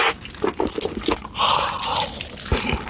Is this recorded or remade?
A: recorded